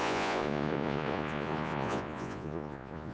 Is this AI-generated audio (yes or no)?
yes